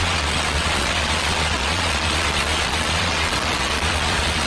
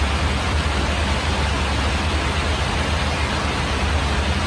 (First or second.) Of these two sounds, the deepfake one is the first